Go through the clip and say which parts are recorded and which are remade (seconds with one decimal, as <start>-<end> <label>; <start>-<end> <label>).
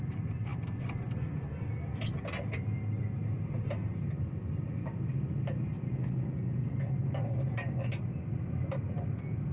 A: 0.0-9.5 recorded